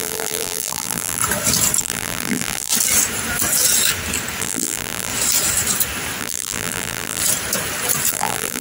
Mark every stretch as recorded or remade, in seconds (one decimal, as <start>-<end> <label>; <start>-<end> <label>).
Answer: 0.0-1.2 remade; 1.2-1.8 recorded; 1.8-2.7 remade; 2.7-4.4 recorded; 4.4-5.1 remade; 5.1-6.2 recorded; 6.2-7.2 remade; 7.2-8.1 recorded; 8.1-8.6 remade